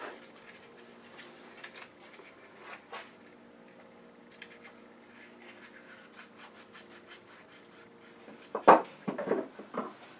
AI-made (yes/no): no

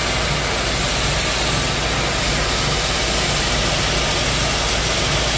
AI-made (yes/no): no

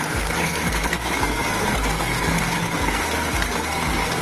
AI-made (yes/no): yes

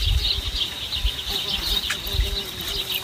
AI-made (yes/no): no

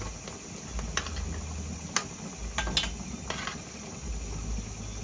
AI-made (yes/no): no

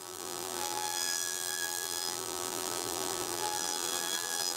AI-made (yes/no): yes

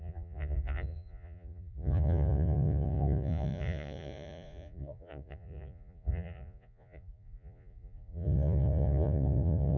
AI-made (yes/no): yes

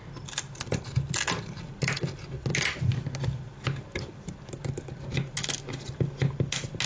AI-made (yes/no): no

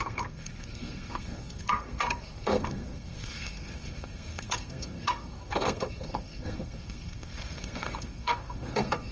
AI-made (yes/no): yes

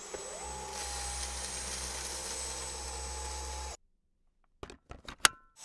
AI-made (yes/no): no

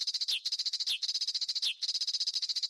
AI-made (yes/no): no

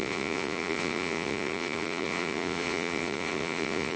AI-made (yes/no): yes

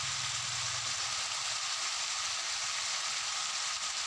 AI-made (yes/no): no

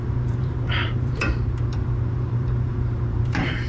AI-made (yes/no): yes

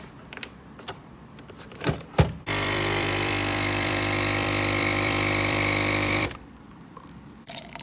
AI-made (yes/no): yes